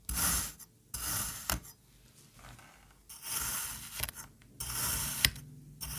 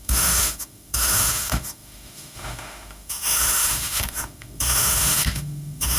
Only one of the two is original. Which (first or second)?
first